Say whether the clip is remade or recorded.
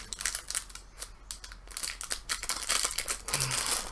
recorded